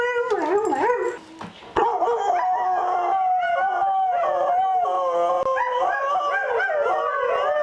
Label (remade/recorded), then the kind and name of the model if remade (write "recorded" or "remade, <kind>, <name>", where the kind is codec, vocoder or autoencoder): recorded